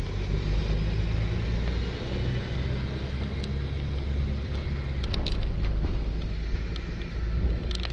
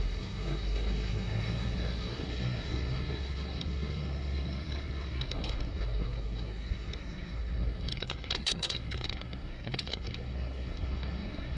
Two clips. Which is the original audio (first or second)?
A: first